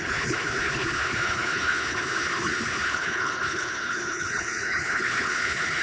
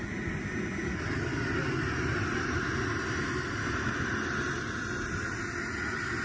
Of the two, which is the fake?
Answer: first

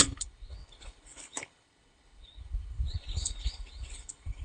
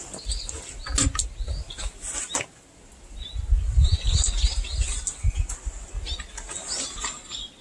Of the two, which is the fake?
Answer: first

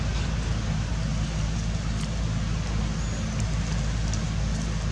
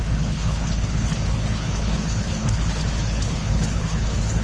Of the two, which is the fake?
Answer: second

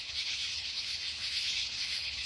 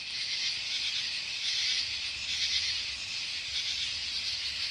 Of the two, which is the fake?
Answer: first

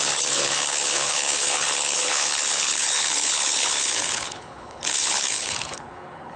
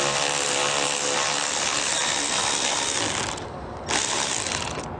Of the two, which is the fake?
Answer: first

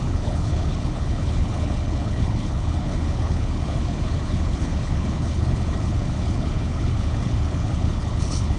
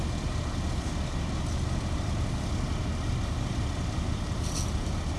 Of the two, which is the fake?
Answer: first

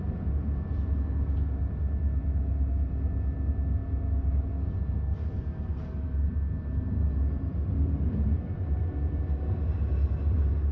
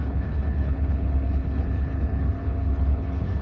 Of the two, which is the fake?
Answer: second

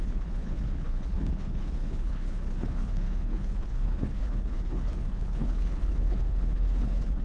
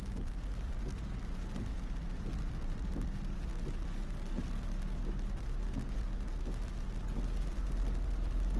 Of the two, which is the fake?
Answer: first